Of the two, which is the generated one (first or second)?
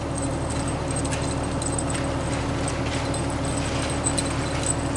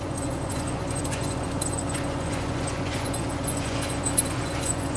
second